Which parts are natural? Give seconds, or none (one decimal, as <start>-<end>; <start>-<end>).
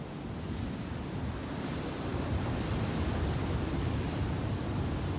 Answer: 0.0-5.2